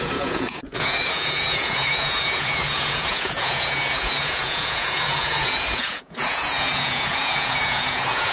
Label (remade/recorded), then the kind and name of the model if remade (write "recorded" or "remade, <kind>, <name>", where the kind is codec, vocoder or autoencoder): remade, vocoder, Vocos